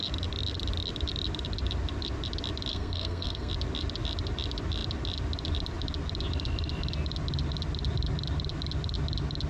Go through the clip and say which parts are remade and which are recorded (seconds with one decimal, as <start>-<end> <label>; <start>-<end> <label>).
0.0-2.7 recorded; 2.7-3.5 remade; 3.5-9.5 recorded